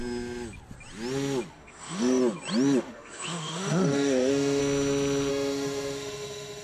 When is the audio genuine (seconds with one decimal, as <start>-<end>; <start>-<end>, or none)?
0.0-1.5; 2.2-2.8; 4.6-5.3